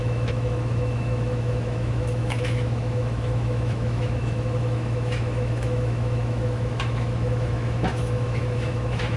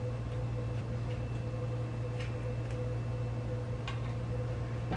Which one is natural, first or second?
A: second